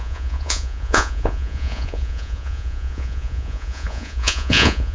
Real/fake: fake